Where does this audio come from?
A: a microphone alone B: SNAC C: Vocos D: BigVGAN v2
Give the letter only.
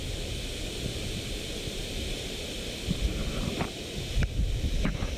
A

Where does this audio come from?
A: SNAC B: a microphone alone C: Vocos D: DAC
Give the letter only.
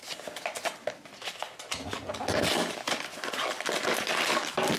B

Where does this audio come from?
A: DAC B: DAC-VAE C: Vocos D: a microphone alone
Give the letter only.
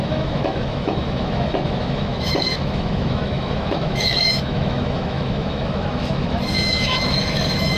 B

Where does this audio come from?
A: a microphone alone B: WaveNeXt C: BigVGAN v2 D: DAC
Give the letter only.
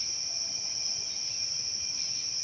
A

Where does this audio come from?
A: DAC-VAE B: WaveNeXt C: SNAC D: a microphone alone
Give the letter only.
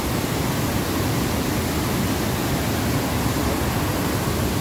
D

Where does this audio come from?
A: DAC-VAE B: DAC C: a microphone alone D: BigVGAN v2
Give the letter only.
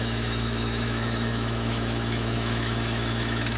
A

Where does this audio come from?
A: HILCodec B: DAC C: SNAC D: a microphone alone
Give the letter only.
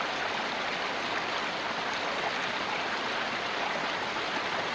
D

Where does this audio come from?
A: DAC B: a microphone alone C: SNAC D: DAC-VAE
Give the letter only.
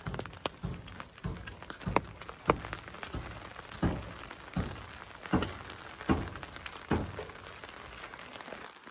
B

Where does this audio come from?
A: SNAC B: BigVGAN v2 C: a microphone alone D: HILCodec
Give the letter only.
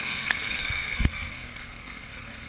A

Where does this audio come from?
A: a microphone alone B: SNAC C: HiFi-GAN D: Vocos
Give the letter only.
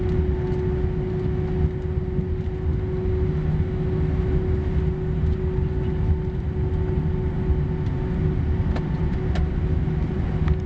A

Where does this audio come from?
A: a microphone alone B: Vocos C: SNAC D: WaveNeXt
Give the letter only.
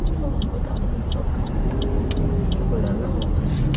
A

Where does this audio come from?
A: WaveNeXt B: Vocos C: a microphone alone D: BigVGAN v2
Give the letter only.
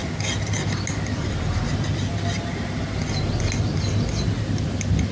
C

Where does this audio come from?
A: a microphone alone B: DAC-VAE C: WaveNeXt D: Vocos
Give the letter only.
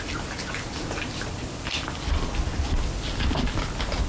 A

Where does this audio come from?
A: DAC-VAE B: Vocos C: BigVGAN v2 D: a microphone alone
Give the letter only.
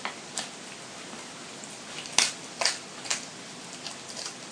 D